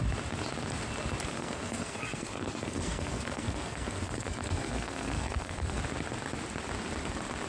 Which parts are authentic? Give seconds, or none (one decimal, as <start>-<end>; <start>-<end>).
0.0-1.3; 5.8-7.5